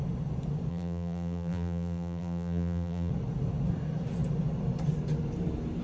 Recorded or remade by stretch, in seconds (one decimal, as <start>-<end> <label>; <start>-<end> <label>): 0.0-0.7 recorded; 0.7-3.1 remade; 3.1-5.8 recorded